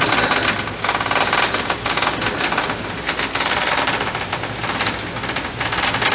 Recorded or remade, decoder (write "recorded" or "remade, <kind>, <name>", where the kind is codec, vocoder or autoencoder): recorded